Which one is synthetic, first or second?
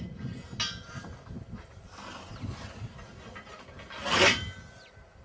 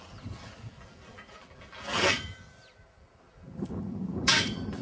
second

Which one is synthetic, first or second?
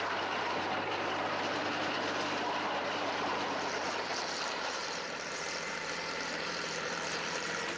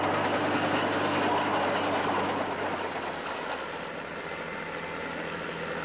first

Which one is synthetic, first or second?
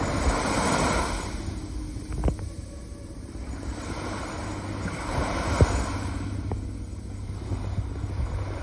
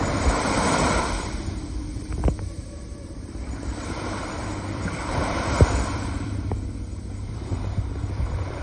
second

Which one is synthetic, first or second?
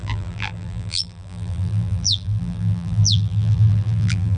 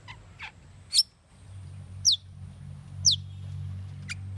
first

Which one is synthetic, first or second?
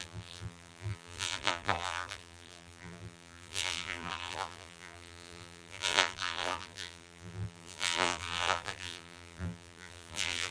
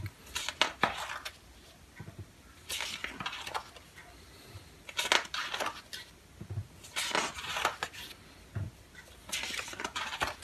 first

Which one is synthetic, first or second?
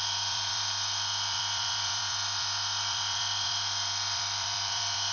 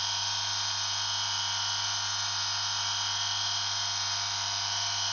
first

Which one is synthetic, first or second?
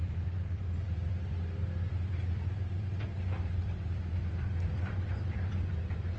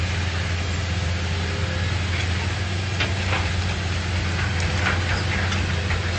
first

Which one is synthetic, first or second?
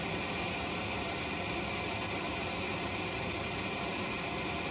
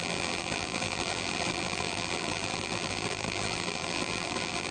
second